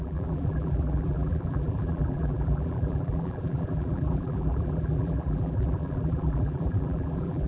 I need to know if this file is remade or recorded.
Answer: remade